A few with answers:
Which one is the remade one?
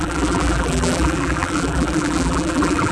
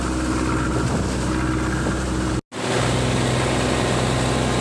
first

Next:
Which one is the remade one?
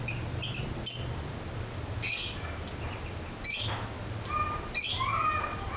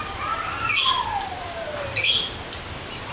second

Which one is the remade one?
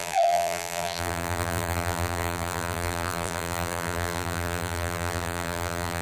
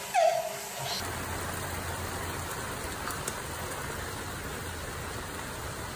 first